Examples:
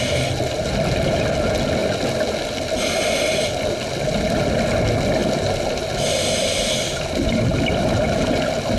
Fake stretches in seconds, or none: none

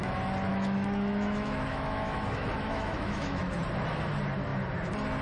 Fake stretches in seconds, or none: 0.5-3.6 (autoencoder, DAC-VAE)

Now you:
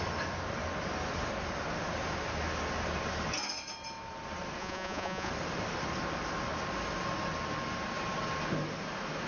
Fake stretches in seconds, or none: 4.6-5.3 (vocoder, Vocos)